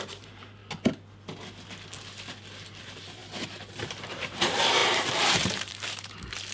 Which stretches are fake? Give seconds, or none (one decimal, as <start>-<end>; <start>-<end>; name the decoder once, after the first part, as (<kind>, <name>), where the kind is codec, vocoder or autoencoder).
0.0-0.6 (vocoder, BigVGAN v2); 2.8-3.2; 3.8-6.5